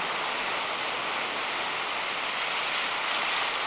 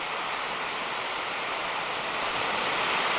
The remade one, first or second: second